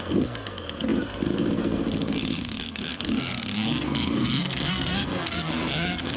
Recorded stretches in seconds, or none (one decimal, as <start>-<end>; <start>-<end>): none